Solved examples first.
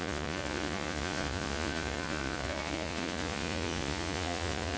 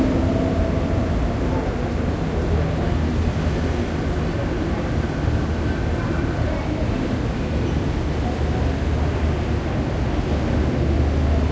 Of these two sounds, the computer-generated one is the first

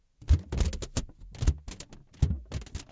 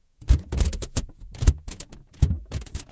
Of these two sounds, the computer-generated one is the second